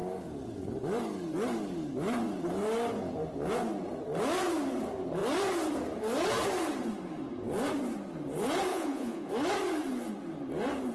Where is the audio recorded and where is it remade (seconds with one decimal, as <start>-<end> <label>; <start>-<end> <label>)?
0.0-8.7 recorded; 8.7-9.3 remade; 9.3-10.9 recorded

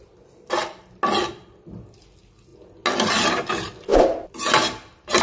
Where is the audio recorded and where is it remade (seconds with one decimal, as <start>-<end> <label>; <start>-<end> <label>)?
0.0-5.2 recorded